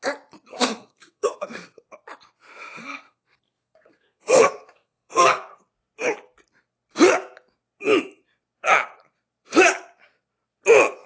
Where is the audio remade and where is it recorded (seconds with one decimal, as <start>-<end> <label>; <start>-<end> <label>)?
0.0-0.5 recorded; 0.5-1.8 remade; 1.8-2.8 recorded; 2.8-5.6 remade; 5.6-11.1 recorded